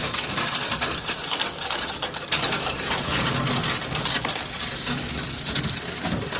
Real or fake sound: fake